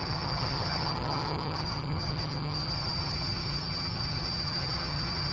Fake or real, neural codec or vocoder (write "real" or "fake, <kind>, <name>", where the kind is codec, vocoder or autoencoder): fake, vocoder, HiFi-GAN